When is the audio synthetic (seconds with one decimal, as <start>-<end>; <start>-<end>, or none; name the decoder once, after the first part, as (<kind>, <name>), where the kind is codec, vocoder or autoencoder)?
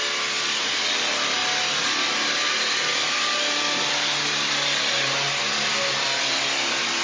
none